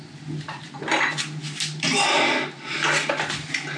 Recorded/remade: recorded